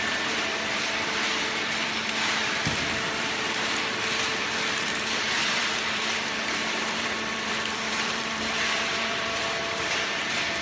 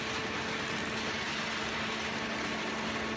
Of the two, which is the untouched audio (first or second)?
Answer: second